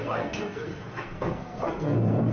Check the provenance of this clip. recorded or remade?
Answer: remade